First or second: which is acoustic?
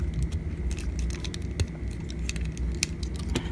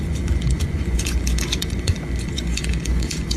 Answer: first